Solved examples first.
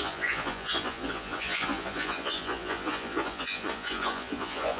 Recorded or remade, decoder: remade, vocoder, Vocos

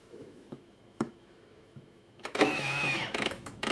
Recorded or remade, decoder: remade, autoencoder, DAC-VAE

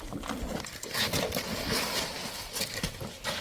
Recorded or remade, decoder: recorded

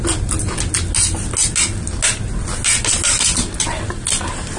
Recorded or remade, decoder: recorded